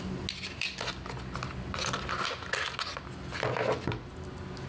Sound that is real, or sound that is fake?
real